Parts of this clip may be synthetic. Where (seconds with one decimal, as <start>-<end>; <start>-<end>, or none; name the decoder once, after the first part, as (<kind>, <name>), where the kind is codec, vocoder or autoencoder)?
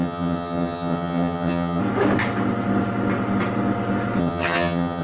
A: 0.0-1.8 (vocoder, HiFi-GAN); 4.2-5.0